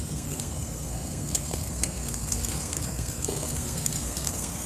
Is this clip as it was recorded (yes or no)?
no